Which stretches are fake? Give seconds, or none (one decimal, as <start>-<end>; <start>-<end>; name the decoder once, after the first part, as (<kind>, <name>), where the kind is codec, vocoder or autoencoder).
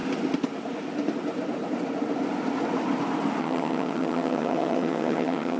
3.4-5.6 (vocoder, HiFi-GAN)